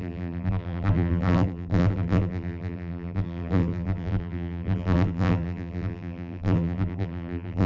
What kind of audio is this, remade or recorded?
remade